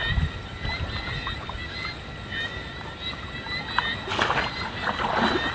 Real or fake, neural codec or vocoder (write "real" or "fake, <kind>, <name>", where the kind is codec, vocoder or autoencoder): real